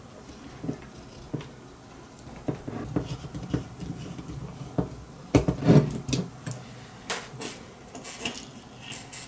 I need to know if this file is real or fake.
real